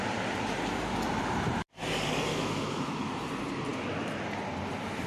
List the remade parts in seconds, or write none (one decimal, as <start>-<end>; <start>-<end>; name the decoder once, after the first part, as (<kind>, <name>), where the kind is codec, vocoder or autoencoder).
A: 2.3-3.1 (autoencoder, DAC-VAE)